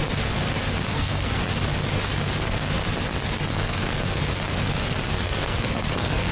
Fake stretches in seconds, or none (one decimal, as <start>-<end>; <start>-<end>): 0.9-1.4; 3.5-4.2; 5.1-6.3